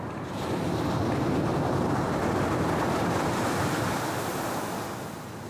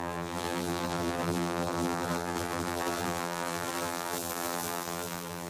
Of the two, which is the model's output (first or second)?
second